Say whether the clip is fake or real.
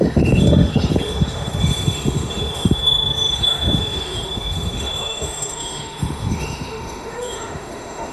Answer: fake